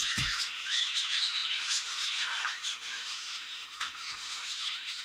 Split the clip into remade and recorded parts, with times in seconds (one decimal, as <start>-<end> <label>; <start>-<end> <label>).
0.0-5.0 remade